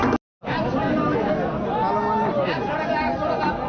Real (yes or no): yes